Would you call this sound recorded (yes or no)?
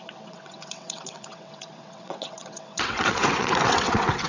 no